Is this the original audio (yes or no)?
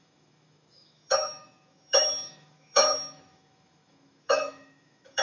no